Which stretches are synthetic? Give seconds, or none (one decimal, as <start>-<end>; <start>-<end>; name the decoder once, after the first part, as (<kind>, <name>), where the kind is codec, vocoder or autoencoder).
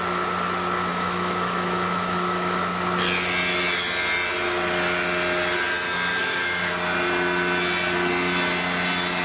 0.9-2.6 (autoencoder, DAC-VAE); 6.2-6.7